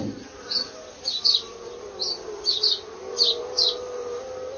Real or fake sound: real